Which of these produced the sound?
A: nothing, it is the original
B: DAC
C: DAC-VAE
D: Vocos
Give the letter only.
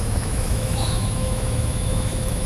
C